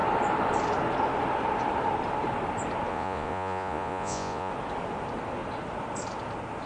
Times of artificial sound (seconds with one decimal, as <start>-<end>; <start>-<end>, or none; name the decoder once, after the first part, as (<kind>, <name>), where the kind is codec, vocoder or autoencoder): 2.9-4.5 (vocoder, Vocos)